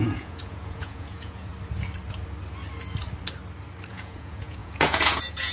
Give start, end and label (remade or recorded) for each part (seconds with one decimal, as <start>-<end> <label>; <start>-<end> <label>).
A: 0.0-1.5 remade; 1.5-3.9 recorded; 3.9-5.5 remade